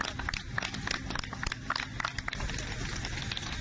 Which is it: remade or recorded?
recorded